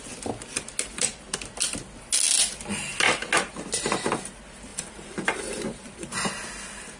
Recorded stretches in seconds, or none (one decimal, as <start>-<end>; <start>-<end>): 0.0-4.7; 6.3-7.0